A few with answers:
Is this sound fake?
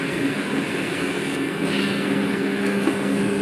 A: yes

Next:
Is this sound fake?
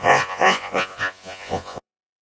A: yes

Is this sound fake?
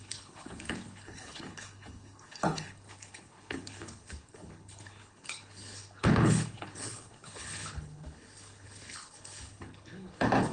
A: yes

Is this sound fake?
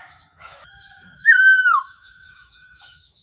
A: yes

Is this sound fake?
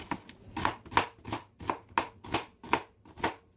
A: no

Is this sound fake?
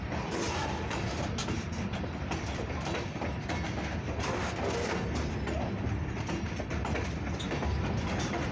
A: no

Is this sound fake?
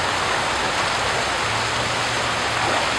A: no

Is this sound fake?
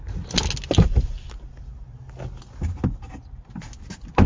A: no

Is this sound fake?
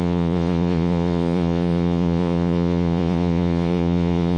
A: yes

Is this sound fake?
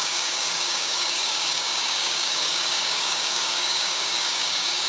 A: yes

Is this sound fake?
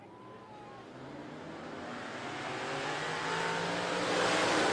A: no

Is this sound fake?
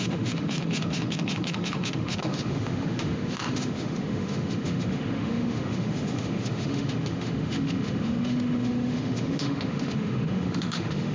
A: yes